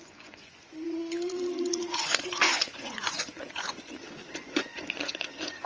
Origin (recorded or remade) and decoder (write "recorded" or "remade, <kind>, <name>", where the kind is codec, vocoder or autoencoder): remade, vocoder, Vocos